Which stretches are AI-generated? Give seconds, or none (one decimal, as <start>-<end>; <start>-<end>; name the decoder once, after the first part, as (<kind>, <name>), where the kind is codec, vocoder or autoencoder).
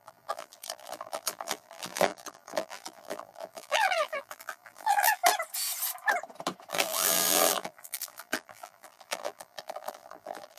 0.0-5.2 (vocoder, BigVGAN v2); 6.7-10.6